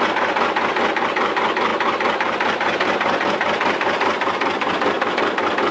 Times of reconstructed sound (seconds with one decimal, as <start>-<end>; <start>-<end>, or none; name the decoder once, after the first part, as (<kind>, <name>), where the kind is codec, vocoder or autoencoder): none